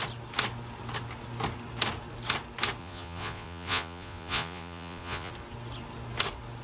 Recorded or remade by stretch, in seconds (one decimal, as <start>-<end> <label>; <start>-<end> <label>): 0.0-2.8 recorded; 2.8-5.3 remade; 5.3-6.6 recorded